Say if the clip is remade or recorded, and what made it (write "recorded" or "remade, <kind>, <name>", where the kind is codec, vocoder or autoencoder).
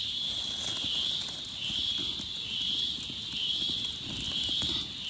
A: recorded